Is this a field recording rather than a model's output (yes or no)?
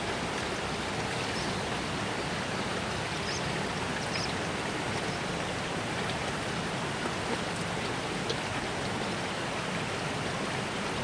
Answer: yes